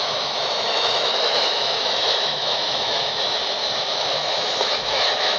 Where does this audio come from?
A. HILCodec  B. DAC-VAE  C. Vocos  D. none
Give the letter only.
B